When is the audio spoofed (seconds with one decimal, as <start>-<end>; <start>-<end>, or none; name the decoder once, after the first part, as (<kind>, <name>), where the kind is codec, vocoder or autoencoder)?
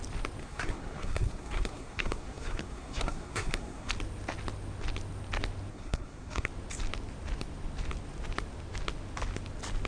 0.4-3.9 (codec, SNAC); 5.7-6.5